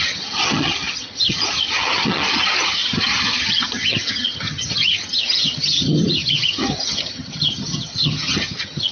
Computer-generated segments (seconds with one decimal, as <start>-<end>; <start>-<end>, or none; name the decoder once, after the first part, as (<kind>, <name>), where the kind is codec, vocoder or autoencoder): 0.0-8.9 (vocoder, HiFi-GAN)